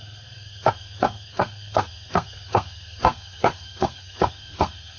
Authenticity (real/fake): fake